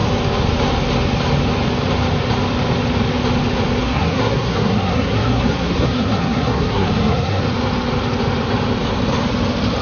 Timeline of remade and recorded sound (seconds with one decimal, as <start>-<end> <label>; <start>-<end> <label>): 0.0-3.8 recorded; 3.8-7.4 remade; 7.4-9.8 recorded

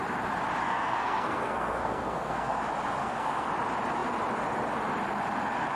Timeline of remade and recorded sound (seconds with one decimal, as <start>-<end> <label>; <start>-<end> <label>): 0.0-0.6 recorded; 0.6-2.6 remade; 2.6-3.0 recorded; 3.0-3.5 remade; 3.5-5.8 recorded